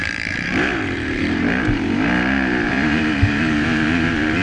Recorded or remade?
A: remade